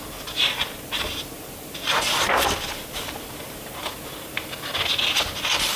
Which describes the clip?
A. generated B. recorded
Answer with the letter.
B